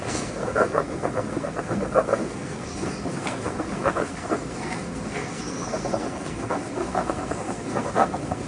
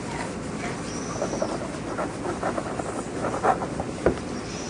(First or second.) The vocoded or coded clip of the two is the first